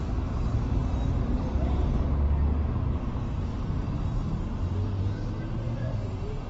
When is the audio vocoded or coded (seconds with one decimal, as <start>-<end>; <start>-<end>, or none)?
none